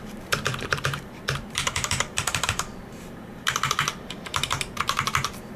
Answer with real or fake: fake